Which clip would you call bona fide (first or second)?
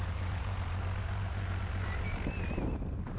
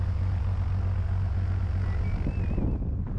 second